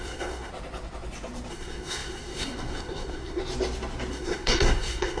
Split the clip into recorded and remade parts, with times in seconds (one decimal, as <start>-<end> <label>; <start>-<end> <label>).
0.0-0.5 remade; 0.5-1.5 recorded; 1.5-3.4 remade; 3.4-4.1 recorded; 4.1-5.2 remade